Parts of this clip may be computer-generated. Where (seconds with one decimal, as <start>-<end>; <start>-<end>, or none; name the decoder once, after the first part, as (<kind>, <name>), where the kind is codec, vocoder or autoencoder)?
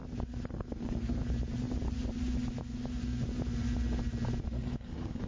0.7-1.2 (codec, SNAC); 4.4-5.3